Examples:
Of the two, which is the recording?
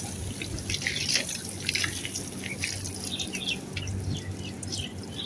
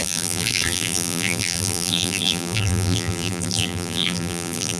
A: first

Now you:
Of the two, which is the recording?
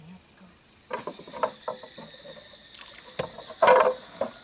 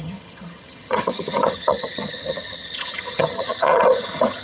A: first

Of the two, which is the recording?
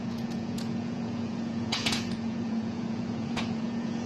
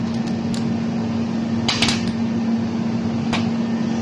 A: second